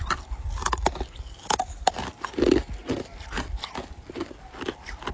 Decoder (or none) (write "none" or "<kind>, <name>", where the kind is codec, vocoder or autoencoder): none